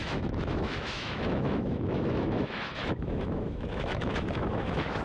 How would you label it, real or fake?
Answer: fake